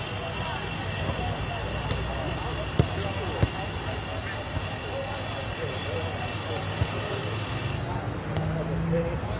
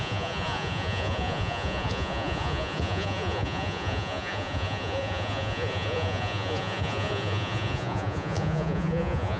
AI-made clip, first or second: second